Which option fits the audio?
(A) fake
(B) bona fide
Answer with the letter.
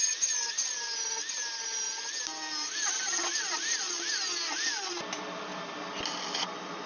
B